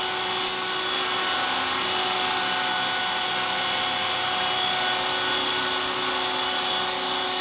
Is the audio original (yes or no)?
yes